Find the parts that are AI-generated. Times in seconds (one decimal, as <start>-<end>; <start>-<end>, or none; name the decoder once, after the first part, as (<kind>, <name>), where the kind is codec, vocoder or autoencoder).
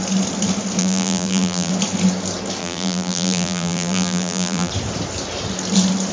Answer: 0.8-1.7 (vocoder, BigVGAN v2); 2.6-4.7